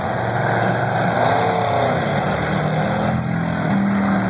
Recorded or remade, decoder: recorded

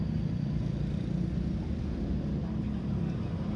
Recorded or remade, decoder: recorded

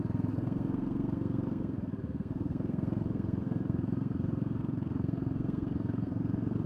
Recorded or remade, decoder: remade, codec, SNAC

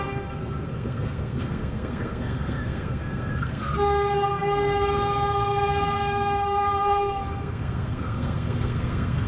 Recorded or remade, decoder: remade, codec, SNAC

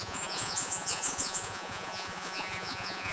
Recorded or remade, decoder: remade, vocoder, Vocos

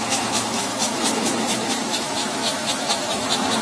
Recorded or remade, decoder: remade, autoencoder, DAC-VAE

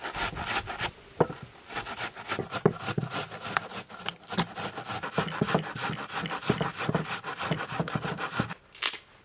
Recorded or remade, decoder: recorded